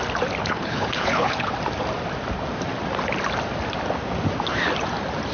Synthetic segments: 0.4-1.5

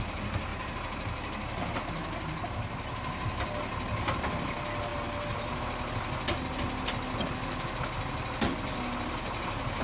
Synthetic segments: none

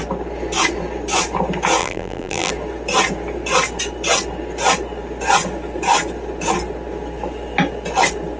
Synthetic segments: 1.8-2.5

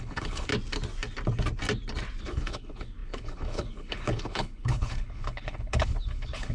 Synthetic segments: 0.0-0.5; 2.2-6.5

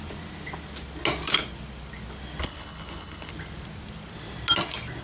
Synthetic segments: 2.4-3.3

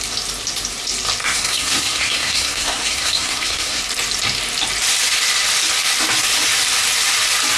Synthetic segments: 1.2-3.8

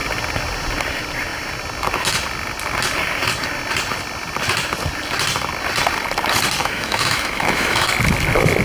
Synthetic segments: 6.6-7.9

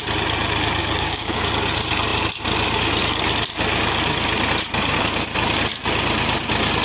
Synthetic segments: 0.8-1.5